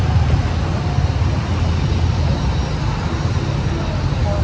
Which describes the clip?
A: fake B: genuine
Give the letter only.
B